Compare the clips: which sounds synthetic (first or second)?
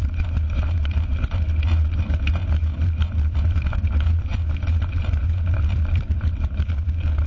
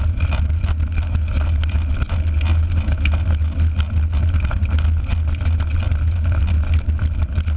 first